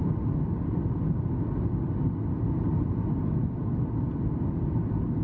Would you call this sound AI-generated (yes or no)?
no